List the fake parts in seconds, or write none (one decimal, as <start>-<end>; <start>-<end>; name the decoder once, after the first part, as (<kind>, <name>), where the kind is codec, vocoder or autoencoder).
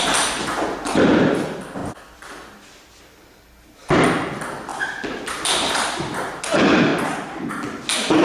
4.7-6.4 (vocoder, BigVGAN v2); 6.9-7.5